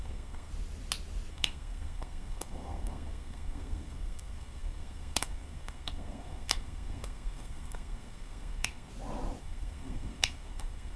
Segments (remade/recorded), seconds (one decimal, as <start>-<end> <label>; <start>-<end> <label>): 0.0-0.5 remade; 0.5-1.3 recorded; 1.3-8.9 remade; 8.9-9.4 recorded; 9.4-11.0 remade